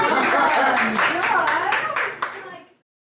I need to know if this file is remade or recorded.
remade